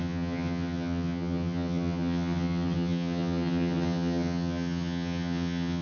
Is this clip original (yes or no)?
no